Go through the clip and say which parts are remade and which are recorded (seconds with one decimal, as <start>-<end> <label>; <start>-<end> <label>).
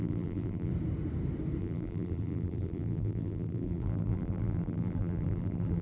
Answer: 0.0-0.7 remade; 0.7-1.6 recorded; 1.6-5.8 remade